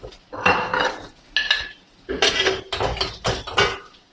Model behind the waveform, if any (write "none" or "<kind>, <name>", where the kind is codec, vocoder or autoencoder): none